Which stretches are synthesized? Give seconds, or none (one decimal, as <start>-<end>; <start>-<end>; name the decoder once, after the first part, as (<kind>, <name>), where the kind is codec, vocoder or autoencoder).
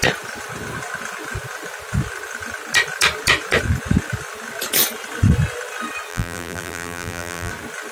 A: 6.1-7.5 (vocoder, BigVGAN v2)